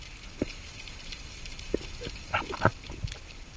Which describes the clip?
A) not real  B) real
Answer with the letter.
B